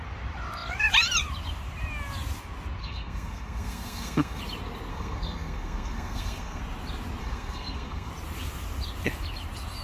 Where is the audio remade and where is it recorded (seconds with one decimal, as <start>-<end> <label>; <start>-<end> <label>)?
0.0-2.8 recorded; 2.8-4.4 remade; 4.4-4.9 recorded; 4.9-6.6 remade; 6.6-7.2 recorded; 7.2-8.1 remade; 8.1-9.8 recorded